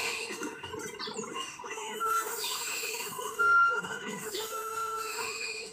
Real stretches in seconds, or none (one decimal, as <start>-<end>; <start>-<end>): 0.7-1.3